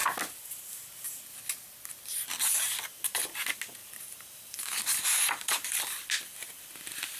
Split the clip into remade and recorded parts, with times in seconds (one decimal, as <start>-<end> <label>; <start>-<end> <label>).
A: 0.0-3.8 recorded; 3.8-5.8 remade; 5.8-7.2 recorded